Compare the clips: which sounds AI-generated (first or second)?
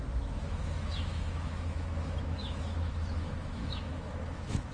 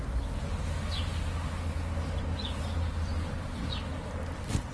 first